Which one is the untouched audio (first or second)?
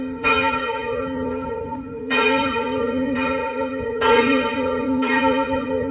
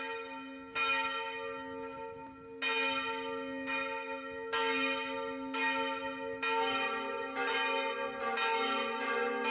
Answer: second